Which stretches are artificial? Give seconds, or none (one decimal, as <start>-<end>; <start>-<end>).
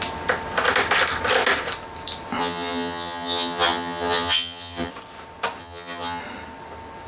2.4-4.9; 5.6-6.2